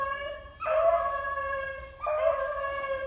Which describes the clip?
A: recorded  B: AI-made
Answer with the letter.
A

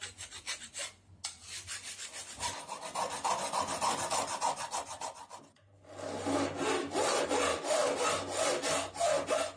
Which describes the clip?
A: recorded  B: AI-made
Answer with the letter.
A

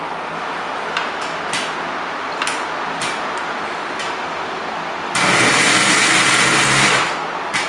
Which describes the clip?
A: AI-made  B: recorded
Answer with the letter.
B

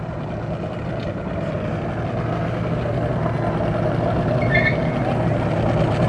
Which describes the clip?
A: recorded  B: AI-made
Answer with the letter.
A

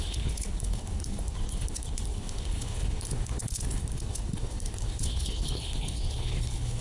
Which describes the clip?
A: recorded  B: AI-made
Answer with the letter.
B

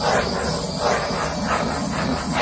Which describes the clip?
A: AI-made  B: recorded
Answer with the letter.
B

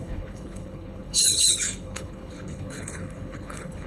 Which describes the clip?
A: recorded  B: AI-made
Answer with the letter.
B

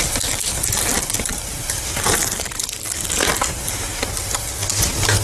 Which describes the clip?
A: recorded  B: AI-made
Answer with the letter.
A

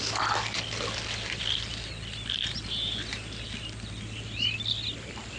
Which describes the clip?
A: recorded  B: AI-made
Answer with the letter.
A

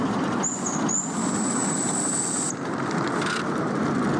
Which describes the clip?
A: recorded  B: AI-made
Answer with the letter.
A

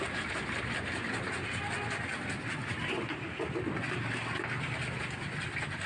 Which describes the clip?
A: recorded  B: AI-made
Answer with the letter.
A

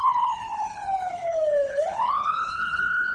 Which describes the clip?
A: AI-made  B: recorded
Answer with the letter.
A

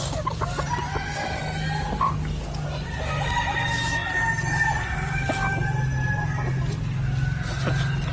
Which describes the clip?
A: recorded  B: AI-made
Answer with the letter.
A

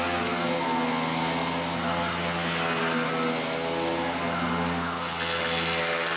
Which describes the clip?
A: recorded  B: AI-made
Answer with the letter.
A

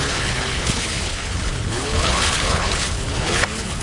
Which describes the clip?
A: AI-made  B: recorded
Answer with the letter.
A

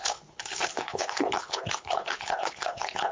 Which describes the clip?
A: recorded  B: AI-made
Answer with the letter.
B